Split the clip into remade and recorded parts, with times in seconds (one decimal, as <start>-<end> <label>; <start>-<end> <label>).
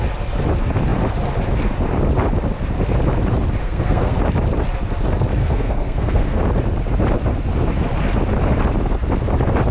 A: 0.0-3.6 recorded; 3.6-4.2 remade; 4.2-5.4 recorded; 5.4-6.4 remade; 6.4-9.7 recorded